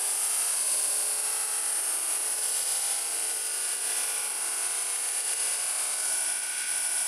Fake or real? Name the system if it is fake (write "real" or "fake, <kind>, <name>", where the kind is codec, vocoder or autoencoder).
real